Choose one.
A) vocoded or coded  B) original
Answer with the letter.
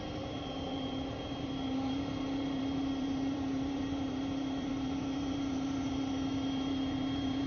A